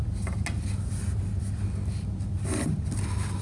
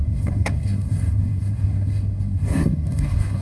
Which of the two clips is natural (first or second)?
first